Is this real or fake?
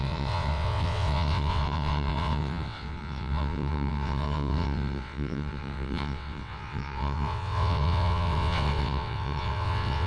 fake